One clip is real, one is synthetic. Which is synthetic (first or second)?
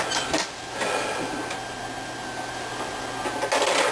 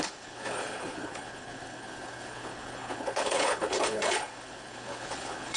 second